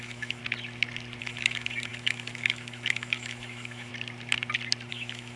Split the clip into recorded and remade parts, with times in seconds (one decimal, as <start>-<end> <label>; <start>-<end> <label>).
0.0-0.4 remade; 0.4-1.2 recorded; 1.2-3.9 remade; 3.9-4.9 recorded; 4.9-5.4 remade